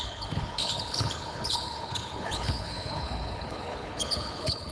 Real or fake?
fake